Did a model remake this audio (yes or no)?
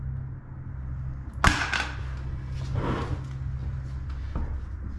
no